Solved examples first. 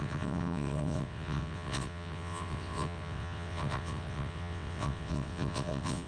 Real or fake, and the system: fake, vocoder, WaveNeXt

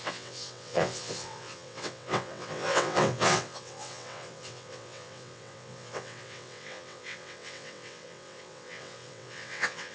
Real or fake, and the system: fake, vocoder, WaveNeXt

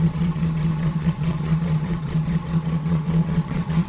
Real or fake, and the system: fake, vocoder, WaveNeXt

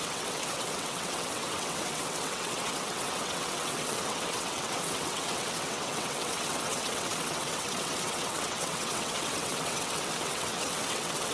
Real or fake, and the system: fake, vocoder, WaveNeXt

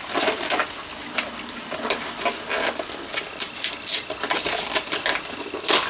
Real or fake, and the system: real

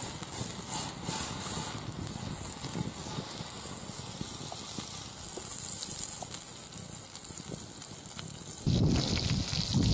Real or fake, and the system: real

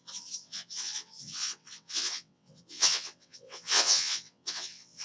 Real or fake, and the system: fake, vocoder, WaveNeXt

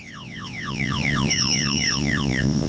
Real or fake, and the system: fake, vocoder, WaveNeXt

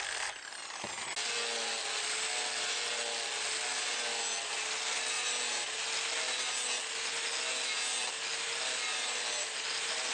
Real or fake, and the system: real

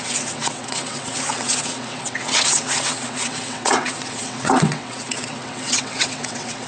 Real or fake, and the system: fake, vocoder, WaveNeXt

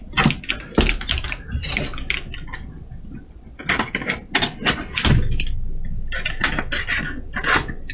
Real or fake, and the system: real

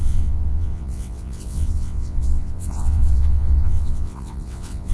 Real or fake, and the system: fake, vocoder, WaveNeXt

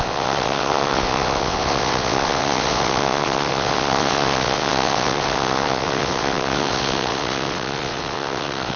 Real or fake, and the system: fake, vocoder, WaveNeXt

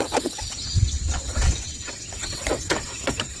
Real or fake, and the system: fake, vocoder, WaveNeXt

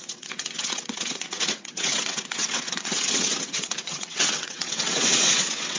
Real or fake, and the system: fake, vocoder, WaveNeXt